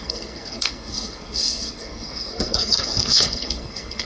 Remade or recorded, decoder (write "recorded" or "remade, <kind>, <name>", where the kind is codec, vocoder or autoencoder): remade, codec, SNAC